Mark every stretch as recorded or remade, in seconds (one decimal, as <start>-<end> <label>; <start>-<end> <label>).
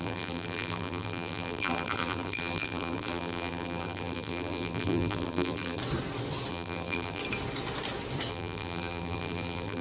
0.0-5.8 remade; 5.8-6.5 recorded; 6.5-7.2 remade; 7.2-8.3 recorded; 8.3-9.8 remade